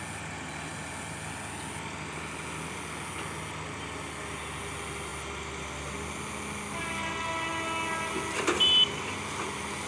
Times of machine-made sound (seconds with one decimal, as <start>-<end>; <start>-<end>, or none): none